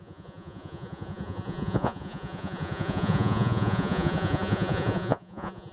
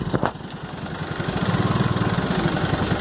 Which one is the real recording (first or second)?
second